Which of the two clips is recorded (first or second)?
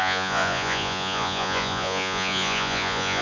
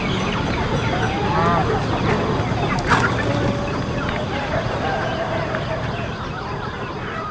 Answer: second